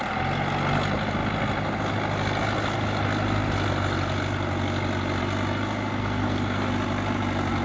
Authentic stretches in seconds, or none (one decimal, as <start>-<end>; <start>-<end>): 0.0-6.0; 6.7-7.6